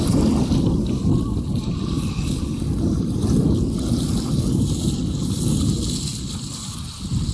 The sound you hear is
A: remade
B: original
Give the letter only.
B